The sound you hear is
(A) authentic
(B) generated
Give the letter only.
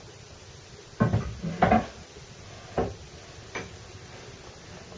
A